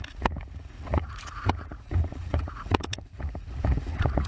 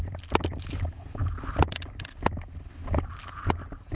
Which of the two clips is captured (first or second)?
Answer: second